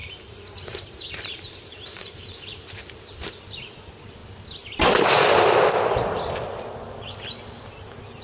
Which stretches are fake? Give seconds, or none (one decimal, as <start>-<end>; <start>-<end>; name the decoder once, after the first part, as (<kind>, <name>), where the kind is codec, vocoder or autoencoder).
0.0-2.8 (vocoder, BigVGAN v2)